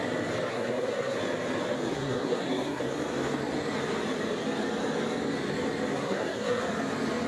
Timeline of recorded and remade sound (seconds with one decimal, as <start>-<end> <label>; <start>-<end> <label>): 0.0-0.5 recorded; 0.5-1.2 remade; 1.2-1.9 recorded; 1.9-2.8 remade; 2.8-5.9 recorded; 5.9-6.6 remade; 6.6-7.3 recorded